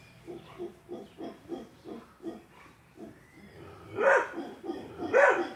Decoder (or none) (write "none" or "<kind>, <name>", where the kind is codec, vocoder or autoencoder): vocoder, BigVGAN v2